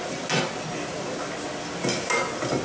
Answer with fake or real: real